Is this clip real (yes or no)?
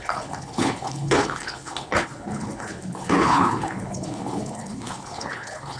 no